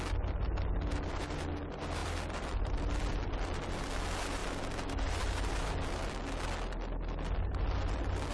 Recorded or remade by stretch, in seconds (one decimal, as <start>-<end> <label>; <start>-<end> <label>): 0.0-2.0 recorded; 2.0-3.4 remade; 3.4-8.3 recorded